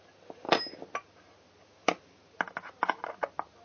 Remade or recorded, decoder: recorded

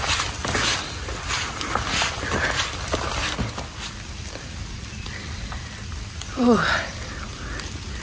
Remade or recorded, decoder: recorded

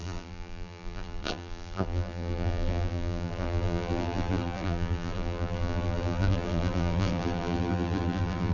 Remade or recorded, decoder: remade, vocoder, BigVGAN v2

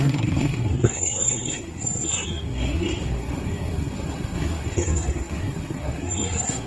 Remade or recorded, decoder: remade, codec, SNAC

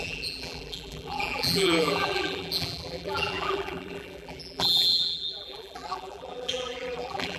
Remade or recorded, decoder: remade, vocoder, BigVGAN v2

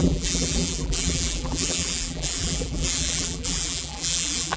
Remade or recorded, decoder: remade, vocoder, BigVGAN v2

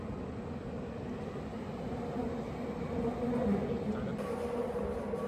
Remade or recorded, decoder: recorded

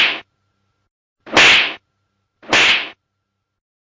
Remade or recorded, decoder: recorded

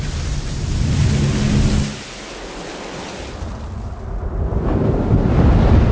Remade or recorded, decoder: recorded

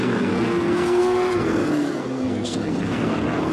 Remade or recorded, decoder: remade, codec, SNAC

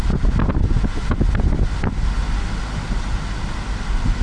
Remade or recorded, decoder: recorded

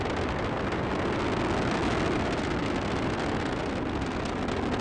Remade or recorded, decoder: recorded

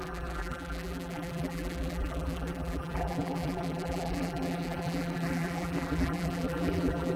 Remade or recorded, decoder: remade, vocoder, BigVGAN v2